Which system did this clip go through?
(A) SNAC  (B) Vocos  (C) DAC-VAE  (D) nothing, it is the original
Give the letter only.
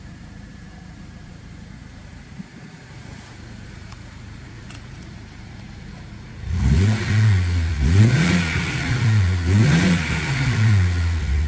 B